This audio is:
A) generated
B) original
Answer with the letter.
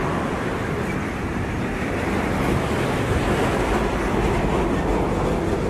B